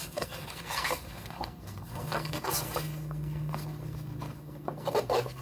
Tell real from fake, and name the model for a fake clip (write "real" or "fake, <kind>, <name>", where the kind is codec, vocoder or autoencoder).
fake, codec, SNAC